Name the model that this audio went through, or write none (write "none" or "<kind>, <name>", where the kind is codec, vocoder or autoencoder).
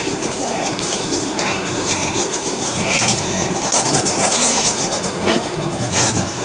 codec, SNAC